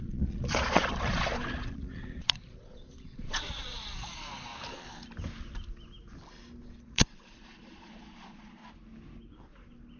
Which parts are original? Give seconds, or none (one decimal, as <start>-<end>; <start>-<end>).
4.5-6.8; 8.6-10.0